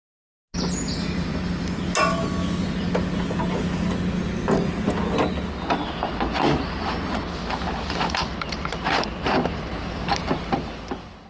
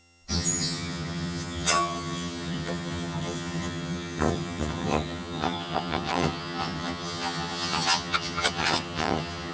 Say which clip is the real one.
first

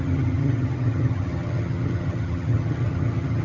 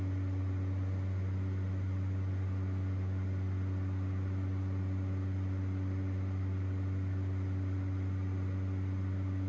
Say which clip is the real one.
second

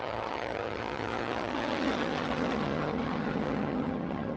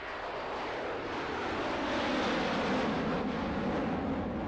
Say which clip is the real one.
second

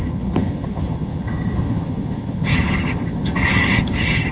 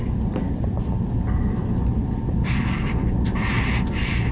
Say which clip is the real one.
second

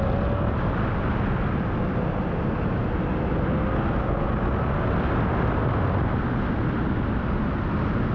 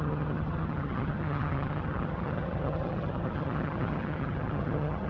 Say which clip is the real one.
first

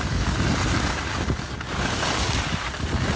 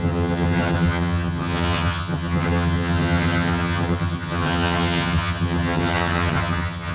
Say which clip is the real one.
first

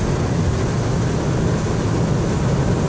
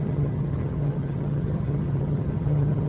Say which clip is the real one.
first